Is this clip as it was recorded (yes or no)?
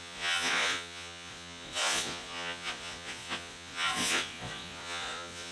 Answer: no